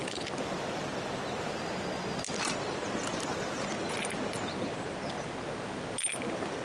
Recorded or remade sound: recorded